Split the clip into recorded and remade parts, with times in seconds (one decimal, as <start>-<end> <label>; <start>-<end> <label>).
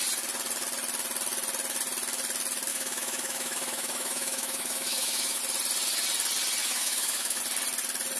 0.0-2.7 recorded; 2.7-5.4 remade; 5.4-6.6 recorded; 6.6-7.4 remade; 7.4-8.2 recorded